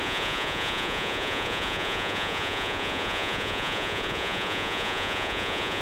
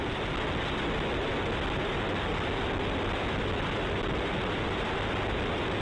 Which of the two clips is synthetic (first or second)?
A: first